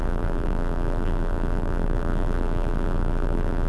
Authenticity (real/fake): fake